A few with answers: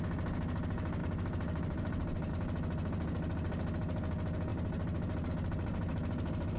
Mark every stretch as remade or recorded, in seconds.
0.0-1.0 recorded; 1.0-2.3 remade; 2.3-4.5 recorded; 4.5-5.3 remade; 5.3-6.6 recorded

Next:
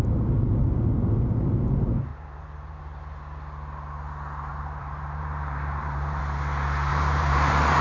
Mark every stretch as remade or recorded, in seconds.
0.0-2.1 recorded; 2.1-2.8 remade; 2.8-4.5 recorded; 4.5-6.2 remade; 6.2-6.9 recorded; 6.9-7.8 remade

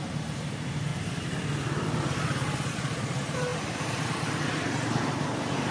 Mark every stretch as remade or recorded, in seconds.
0.0-0.9 remade; 0.9-2.2 recorded; 2.2-5.7 remade

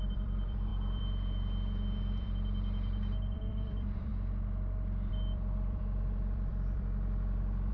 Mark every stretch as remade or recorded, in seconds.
0.0-4.1 remade; 4.1-5.1 recorded; 5.1-7.7 remade

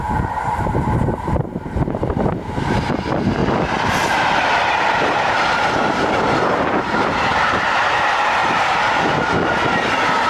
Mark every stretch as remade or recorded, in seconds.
0.0-3.4 remade; 3.4-5.2 recorded; 5.2-10.3 remade